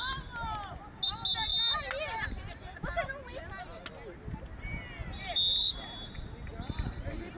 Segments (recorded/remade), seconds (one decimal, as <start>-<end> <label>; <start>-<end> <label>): 0.0-6.5 recorded; 6.5-7.4 remade